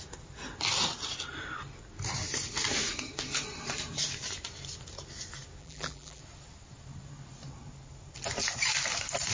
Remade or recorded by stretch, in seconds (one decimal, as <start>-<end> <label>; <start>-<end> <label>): 0.0-5.6 recorded; 5.6-6.2 remade; 6.2-9.3 recorded